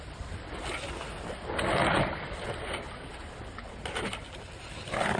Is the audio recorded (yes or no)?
yes